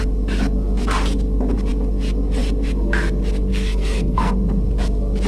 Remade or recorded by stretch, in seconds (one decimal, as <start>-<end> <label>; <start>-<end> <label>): 0.0-3.5 recorded; 3.5-4.3 remade; 4.3-5.3 recorded